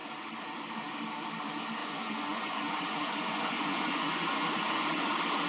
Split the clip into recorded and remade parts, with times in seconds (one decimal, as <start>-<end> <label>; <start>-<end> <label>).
0.0-1.8 recorded; 1.8-5.1 remade; 5.1-5.5 recorded